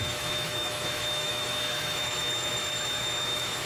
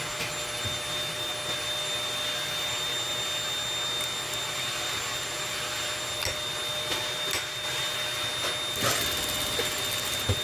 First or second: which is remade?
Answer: first